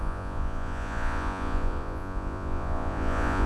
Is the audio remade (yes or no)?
yes